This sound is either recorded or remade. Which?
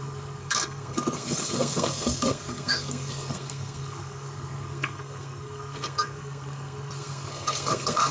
remade